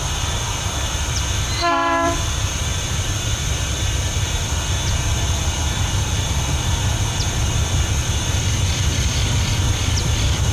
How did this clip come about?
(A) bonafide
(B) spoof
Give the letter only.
B